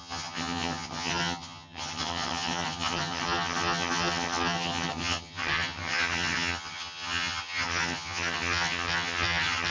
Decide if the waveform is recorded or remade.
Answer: remade